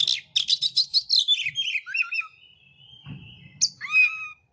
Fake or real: real